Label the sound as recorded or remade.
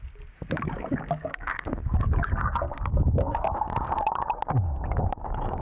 remade